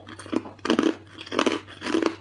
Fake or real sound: real